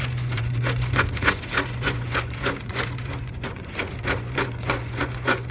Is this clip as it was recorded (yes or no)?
no